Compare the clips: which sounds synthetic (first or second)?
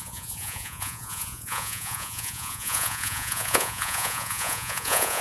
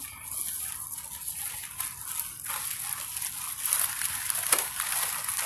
first